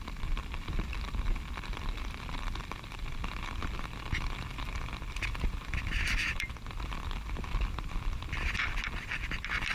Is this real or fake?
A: fake